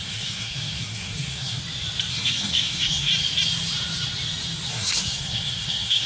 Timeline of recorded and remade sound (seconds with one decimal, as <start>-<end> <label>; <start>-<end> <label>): 0.0-1.6 remade; 1.6-2.1 recorded; 2.1-3.1 remade; 3.1-4.7 recorded; 4.7-6.1 remade